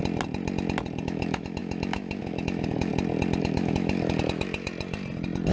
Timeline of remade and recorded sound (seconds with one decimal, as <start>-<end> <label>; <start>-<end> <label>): 0.0-1.0 recorded; 1.0-2.9 remade; 2.9-3.4 recorded; 3.4-4.7 remade; 4.7-5.5 recorded